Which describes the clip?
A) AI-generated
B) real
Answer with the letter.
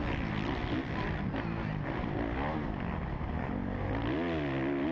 B